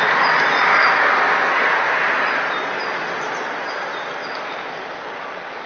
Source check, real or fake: real